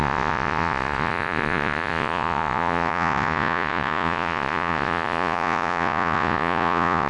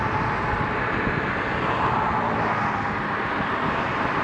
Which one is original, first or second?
second